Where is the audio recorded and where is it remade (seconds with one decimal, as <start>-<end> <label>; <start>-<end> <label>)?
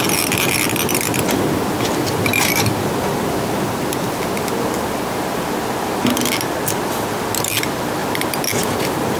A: 0.0-9.2 recorded